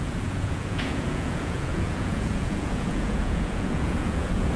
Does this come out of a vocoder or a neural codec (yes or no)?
yes